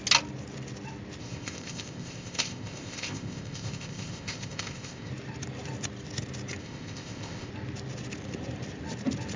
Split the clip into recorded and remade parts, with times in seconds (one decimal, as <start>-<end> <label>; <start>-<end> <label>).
0.0-1.2 recorded; 1.2-5.1 remade; 5.1-6.6 recorded; 6.6-7.5 remade; 7.5-9.4 recorded